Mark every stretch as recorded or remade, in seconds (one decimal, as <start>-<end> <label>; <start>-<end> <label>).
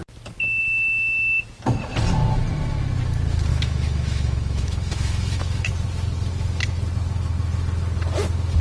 0.0-3.5 recorded; 3.5-5.7 remade; 5.7-8.6 recorded